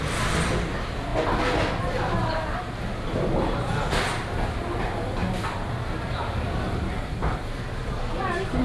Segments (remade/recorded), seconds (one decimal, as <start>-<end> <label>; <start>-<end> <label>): 0.0-8.6 recorded